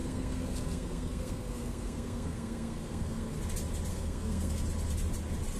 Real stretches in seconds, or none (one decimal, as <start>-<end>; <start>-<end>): 3.4-3.9; 4.6-5.6